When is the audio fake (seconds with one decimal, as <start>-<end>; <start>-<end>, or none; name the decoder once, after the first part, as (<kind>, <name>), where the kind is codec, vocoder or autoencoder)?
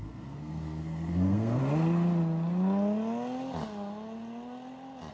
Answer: 0.0-1.6 (codec, SNAC)